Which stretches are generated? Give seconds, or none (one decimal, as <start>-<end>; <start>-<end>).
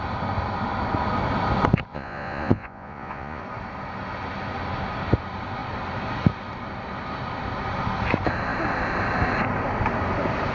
1.9-3.4